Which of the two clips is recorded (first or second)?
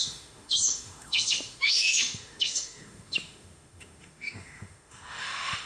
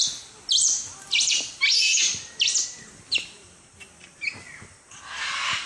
second